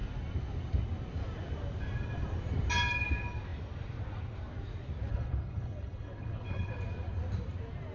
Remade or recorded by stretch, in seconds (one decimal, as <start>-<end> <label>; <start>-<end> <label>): 0.0-5.1 recorded; 5.1-6.7 remade; 6.7-7.9 recorded